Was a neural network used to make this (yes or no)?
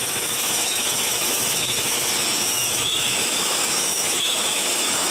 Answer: yes